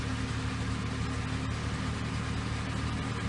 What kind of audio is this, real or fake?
real